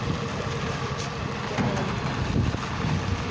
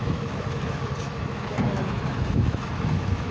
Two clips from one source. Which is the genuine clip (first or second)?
first